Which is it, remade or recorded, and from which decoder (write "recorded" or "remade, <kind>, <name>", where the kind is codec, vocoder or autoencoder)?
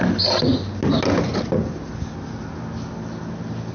recorded